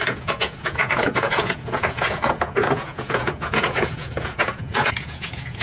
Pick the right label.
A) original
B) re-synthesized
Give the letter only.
B